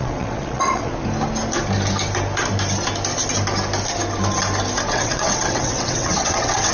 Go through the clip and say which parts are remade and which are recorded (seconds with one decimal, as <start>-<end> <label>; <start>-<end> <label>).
0.0-0.9 remade; 0.9-4.9 recorded; 4.9-6.7 remade